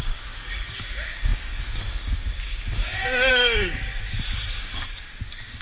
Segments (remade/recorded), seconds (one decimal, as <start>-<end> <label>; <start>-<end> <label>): 0.0-5.6 remade